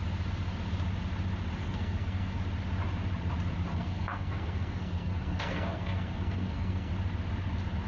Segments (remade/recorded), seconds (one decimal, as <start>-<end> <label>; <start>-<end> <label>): 0.0-1.6 recorded; 1.6-2.4 remade; 2.4-3.7 recorded; 3.7-6.9 remade; 6.9-7.9 recorded